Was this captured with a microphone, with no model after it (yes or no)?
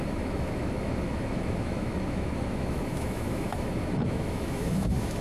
no